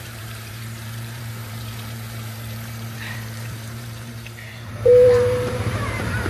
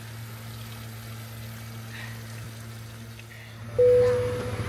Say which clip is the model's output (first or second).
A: first